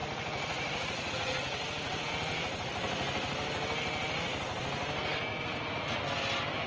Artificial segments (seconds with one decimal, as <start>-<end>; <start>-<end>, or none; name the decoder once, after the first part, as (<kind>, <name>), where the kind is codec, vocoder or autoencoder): 0.0-2.1 (vocoder, Vocos); 5.3-6.0